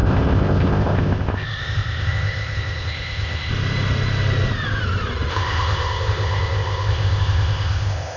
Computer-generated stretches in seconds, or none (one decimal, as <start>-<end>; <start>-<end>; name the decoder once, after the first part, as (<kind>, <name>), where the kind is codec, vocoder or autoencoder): 0.0-3.5 (codec, ZipCodec); 5.3-8.2